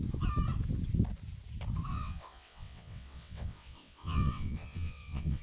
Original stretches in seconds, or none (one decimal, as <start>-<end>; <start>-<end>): 0.0-1.9